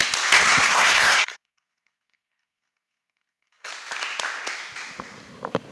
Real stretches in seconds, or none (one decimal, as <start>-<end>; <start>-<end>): 0.0-0.4; 3.7-5.7